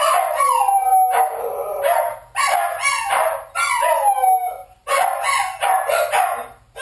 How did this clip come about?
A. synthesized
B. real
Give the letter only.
B